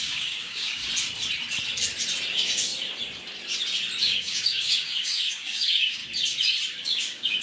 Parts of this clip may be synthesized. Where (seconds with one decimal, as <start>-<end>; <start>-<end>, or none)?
0.0-0.8; 2.3-2.7; 4.0-6.0; 6.8-7.4